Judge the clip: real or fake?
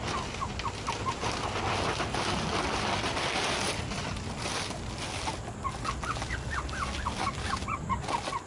real